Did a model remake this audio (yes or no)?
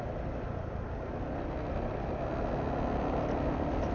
no